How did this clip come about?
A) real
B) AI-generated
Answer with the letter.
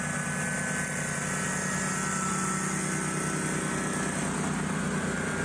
A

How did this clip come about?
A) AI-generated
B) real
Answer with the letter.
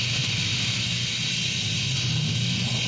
B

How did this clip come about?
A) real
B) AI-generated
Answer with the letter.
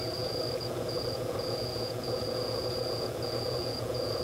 B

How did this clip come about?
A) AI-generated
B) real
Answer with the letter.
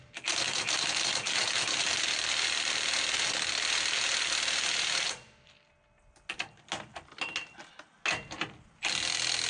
B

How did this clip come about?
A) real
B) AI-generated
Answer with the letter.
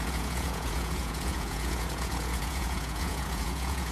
B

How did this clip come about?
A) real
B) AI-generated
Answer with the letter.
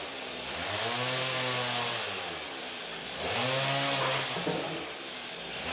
A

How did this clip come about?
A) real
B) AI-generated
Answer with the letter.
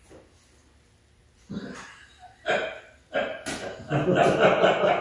A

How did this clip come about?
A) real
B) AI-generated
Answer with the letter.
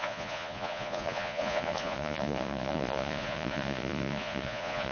B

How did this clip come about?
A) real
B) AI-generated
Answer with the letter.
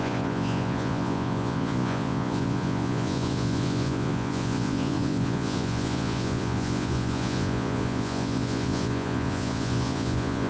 B